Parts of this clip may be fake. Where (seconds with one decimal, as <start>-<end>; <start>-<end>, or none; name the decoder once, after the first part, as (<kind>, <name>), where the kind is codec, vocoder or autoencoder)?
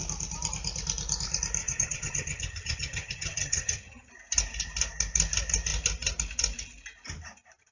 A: 1.6-4.1 (vocoder, HiFi-GAN)